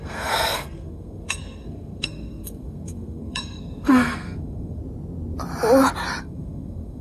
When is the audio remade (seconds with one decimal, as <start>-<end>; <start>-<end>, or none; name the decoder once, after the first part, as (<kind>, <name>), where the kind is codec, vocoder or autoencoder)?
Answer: 0.0-4.8 (codec, SNAC); 6.2-7.0